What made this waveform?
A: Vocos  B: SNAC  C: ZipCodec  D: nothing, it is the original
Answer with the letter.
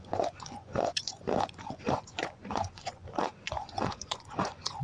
A